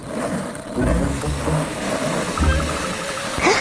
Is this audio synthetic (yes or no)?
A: no